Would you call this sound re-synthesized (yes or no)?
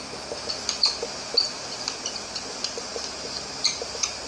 no